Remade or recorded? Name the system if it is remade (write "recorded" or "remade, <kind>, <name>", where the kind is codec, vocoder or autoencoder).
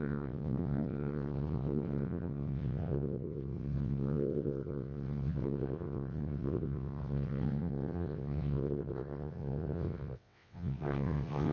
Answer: remade, vocoder, WaveNeXt